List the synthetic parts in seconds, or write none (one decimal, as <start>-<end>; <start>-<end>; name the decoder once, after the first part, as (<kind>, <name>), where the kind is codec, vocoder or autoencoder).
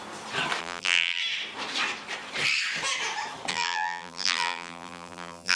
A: 0.6-1.2 (vocoder, BigVGAN v2); 3.5-5.6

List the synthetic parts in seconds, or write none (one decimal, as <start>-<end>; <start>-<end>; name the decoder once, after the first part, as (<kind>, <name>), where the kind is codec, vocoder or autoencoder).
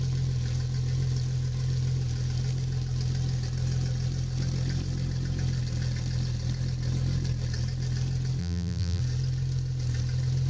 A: 8.4-9.0 (vocoder, BigVGAN v2)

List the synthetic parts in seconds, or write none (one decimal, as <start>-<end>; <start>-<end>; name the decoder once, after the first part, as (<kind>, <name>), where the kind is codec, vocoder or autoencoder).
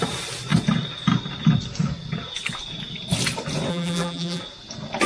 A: 3.7-4.4 (vocoder, BigVGAN v2)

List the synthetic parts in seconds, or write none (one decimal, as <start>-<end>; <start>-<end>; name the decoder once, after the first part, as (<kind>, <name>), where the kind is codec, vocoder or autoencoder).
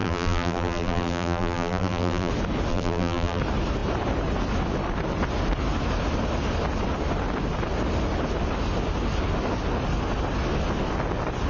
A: 0.0-2.3 (vocoder, BigVGAN v2); 2.7-3.4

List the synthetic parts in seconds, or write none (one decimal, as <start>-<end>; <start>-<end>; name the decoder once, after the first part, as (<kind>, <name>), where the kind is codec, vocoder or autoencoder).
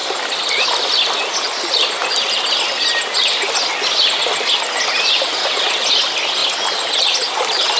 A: 0.0-1.3 (vocoder, BigVGAN v2)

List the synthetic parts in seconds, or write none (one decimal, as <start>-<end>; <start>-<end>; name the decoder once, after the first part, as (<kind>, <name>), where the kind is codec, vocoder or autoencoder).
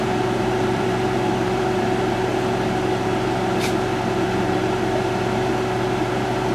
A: 0.0-2.3 (vocoder, BigVGAN v2); 6.0-6.5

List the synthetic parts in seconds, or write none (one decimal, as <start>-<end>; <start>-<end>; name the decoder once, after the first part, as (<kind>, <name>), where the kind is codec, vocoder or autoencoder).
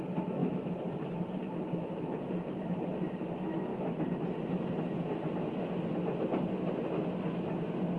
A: 0.4-2.9 (vocoder, BigVGAN v2)